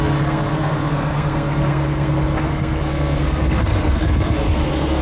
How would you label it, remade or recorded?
remade